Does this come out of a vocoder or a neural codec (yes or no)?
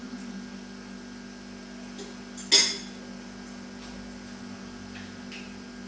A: no